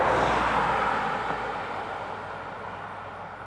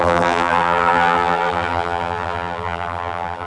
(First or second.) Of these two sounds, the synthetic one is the second